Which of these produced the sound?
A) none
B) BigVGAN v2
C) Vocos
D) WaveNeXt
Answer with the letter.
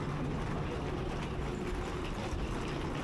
A